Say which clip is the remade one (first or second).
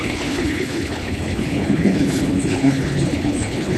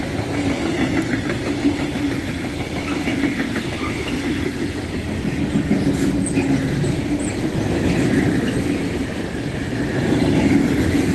first